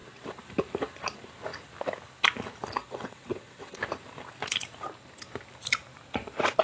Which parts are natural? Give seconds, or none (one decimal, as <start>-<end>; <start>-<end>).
0.0-2.8; 3.8-6.6